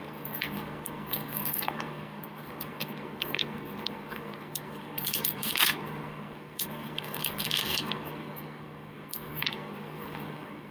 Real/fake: fake